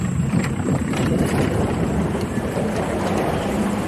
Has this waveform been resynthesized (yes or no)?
no